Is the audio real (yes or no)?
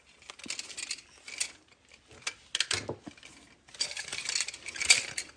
yes